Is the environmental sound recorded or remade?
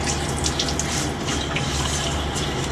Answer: recorded